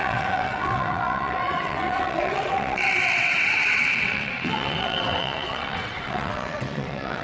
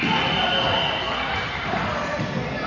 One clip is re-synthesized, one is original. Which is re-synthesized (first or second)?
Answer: first